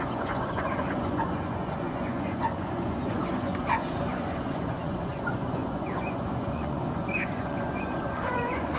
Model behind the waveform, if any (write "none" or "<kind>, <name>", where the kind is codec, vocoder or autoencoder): vocoder, Vocos